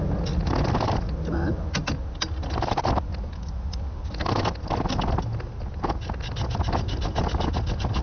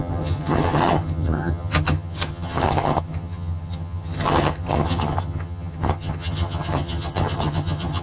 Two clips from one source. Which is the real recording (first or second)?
first